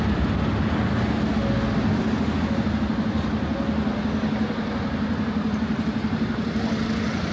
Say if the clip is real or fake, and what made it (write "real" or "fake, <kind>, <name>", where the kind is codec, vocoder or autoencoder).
real